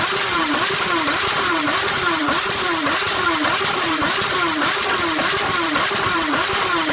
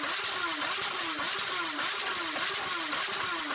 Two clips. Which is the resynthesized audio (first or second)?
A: first